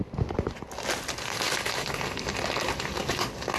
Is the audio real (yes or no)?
yes